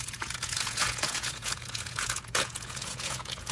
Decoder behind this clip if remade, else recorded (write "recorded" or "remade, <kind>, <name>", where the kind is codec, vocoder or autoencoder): remade, vocoder, Vocos